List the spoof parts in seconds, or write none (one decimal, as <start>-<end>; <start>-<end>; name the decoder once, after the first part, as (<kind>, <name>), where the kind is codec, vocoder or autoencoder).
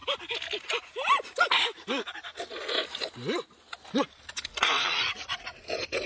4.5-5.4 (vocoder, Vocos)